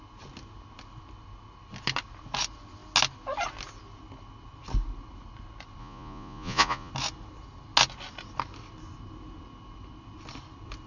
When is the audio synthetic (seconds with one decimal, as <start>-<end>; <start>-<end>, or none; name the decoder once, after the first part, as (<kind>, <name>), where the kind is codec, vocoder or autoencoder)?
5.8-6.9 (vocoder, Vocos)